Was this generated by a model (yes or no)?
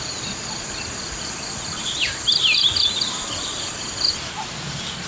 no